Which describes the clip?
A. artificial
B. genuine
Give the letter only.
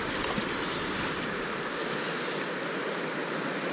B